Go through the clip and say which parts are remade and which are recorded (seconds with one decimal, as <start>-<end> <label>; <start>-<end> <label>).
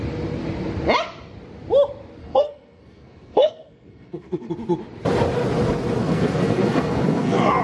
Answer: 0.0-2.2 recorded; 2.2-4.5 remade; 4.5-6.0 recorded; 6.0-7.6 remade